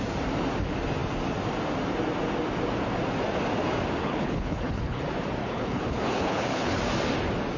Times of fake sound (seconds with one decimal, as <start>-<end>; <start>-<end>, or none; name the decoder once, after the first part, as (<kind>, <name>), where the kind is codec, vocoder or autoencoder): 4.0-5.0 (codec, HILCodec); 5.4-6.8